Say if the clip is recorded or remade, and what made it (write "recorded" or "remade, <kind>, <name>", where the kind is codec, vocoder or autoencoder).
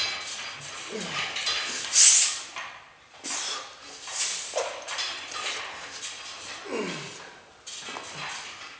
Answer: recorded